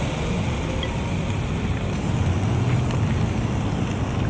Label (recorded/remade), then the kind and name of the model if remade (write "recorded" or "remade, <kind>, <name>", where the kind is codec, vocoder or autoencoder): recorded